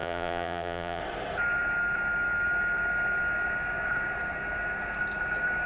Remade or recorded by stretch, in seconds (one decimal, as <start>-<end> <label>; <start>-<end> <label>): 0.0-1.0 remade; 1.0-5.7 recorded